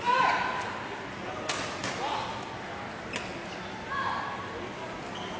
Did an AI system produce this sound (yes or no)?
no